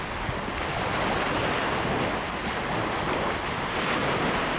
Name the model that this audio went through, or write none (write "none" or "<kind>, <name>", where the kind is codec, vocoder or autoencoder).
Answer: none